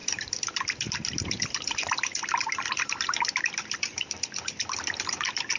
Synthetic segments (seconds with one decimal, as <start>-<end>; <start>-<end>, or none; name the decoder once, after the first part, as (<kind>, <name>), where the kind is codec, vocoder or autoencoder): none